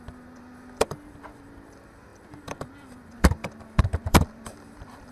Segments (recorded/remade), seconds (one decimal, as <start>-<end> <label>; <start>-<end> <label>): 0.0-5.1 remade